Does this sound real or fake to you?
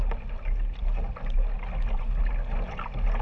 real